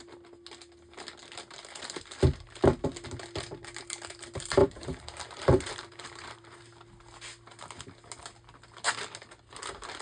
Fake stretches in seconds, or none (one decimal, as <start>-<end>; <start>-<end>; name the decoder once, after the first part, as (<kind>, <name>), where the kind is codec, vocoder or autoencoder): 4.6-6.6 (vocoder, BigVGAN v2)

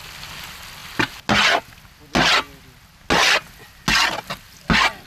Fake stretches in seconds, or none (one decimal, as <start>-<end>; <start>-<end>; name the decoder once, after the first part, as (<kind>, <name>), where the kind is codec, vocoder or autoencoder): none

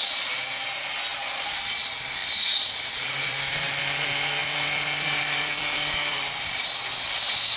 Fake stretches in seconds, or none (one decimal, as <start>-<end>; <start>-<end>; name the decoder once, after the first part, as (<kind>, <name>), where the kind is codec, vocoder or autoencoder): 1.1-1.6 (vocoder, BigVGAN v2); 2.2-3.8; 4.4-6.7

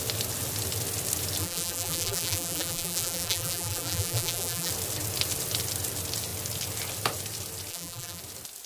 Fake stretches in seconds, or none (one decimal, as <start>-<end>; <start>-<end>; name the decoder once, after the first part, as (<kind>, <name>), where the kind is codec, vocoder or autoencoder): 1.4-4.7 (vocoder, BigVGAN v2); 7.7-8.2

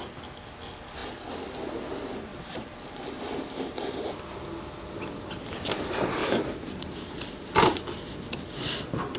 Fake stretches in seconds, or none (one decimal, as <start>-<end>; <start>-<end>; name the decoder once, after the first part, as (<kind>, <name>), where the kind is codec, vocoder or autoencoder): 2.3-4.2 (vocoder, BigVGAN v2); 6.2-7.8

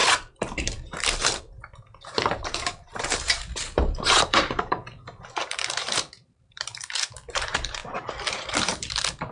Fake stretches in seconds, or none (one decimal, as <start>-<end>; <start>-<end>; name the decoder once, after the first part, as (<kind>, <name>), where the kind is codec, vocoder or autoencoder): 0.0-7.8 (vocoder, BigVGAN v2); 8.3-9.3